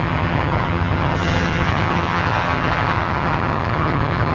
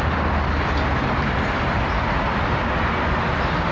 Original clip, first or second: second